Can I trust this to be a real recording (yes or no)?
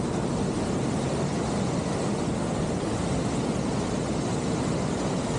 yes